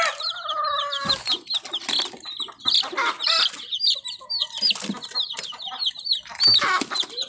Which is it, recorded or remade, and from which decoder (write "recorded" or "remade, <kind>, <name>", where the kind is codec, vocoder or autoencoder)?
recorded